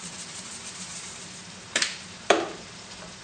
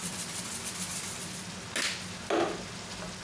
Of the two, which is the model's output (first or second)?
first